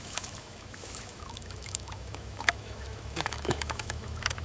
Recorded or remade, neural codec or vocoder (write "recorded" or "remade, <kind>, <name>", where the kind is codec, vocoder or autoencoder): remade, autoencoder, DAC-VAE